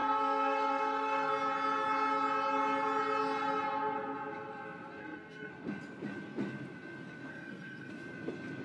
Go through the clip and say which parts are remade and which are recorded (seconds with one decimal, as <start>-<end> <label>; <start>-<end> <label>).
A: 0.0-1.3 remade; 1.3-5.0 recorded; 5.0-5.5 remade; 5.5-7.3 recorded; 7.3-7.9 remade; 7.9-8.6 recorded